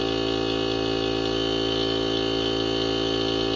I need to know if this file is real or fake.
real